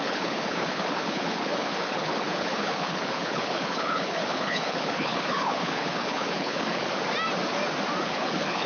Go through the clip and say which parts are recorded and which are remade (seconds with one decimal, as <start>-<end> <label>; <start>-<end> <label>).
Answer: 0.0-6.9 remade; 6.9-8.0 recorded; 8.0-8.7 remade